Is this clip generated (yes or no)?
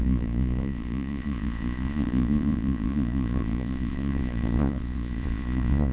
yes